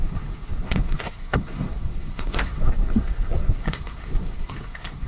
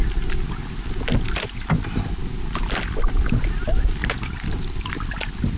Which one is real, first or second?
second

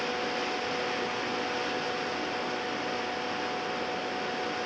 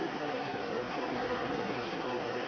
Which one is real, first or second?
first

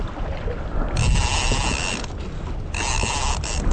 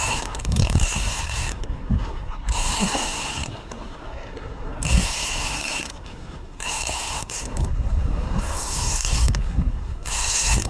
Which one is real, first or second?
first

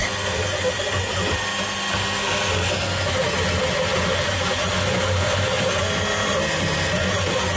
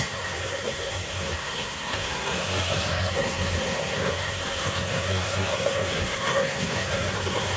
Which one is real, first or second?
first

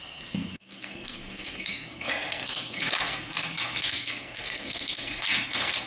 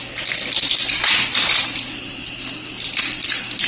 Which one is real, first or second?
second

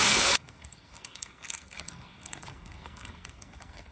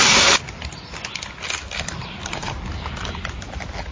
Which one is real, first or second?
second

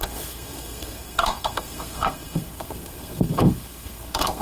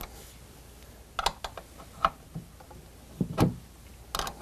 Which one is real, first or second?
second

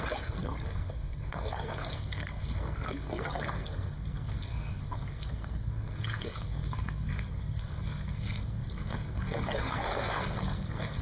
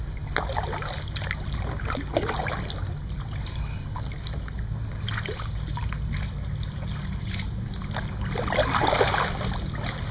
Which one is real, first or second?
second